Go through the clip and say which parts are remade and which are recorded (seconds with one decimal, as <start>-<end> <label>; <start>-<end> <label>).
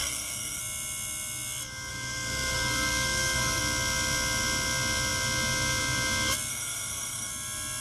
0.0-0.6 remade; 0.6-1.9 recorded; 1.9-3.6 remade; 3.6-6.5 recorded; 6.5-7.3 remade; 7.3-7.8 recorded